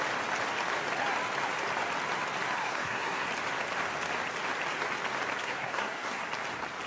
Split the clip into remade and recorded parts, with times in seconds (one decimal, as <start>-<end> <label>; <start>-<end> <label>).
0.0-2.6 recorded; 2.6-3.3 remade; 3.3-5.4 recorded; 5.4-6.2 remade; 6.2-6.9 recorded